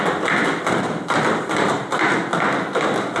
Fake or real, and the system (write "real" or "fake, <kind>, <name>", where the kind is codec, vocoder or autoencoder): real